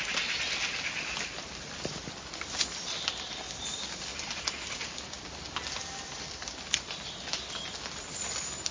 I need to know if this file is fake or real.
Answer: real